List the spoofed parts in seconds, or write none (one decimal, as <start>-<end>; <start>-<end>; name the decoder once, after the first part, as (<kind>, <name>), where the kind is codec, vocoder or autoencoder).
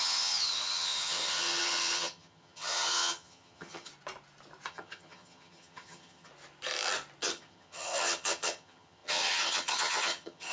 0.0-3.9 (vocoder, HiFi-GAN); 4.7-6.3; 7.2-10.5